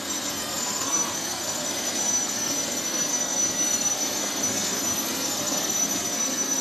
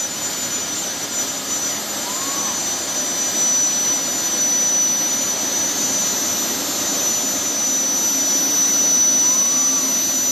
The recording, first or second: second